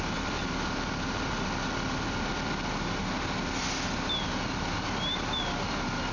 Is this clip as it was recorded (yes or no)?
yes